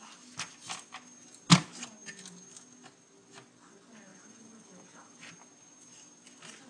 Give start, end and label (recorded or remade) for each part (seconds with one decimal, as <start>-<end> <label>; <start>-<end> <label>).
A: 0.0-4.1 recorded; 4.1-5.3 remade; 5.3-6.7 recorded